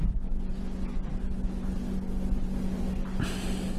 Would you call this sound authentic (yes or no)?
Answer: yes